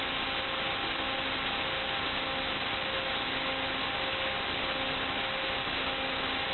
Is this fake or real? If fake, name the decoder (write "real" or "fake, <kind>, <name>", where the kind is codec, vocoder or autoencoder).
real